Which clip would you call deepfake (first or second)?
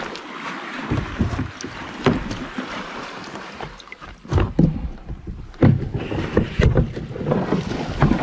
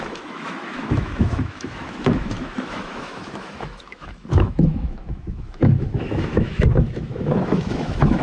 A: second